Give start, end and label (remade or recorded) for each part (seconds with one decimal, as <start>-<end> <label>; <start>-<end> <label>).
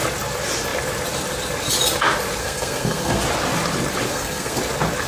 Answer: 0.0-2.4 recorded; 2.4-3.2 remade; 3.2-4.1 recorded; 4.1-4.6 remade; 4.6-5.1 recorded